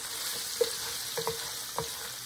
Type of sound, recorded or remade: recorded